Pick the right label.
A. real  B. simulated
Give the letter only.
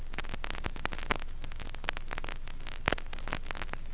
A